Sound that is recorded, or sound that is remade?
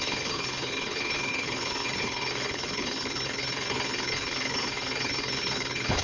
remade